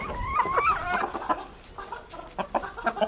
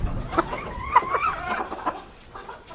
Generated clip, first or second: second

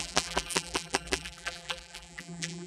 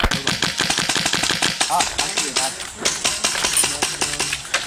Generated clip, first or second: first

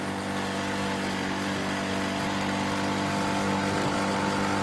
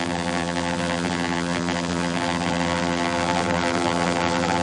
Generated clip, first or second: second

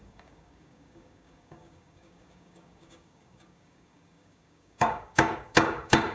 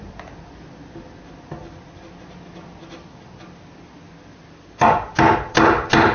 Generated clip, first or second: first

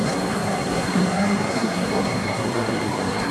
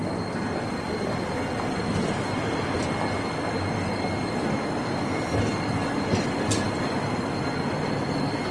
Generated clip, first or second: first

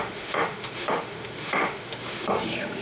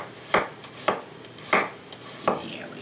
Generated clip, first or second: first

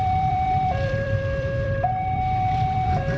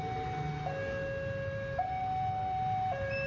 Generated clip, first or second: first